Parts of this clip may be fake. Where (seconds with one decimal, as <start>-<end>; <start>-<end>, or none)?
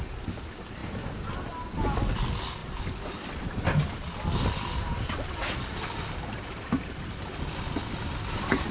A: none